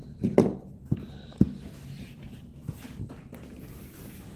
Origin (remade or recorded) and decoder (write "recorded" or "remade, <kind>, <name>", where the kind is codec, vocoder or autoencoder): recorded